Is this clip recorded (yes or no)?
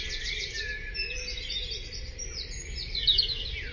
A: no